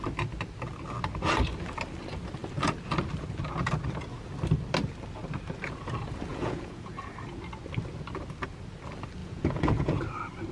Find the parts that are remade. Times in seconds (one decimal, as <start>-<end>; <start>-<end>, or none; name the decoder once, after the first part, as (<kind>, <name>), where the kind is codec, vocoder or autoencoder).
6.3-7.1 (vocoder, Vocos); 9.2-10.0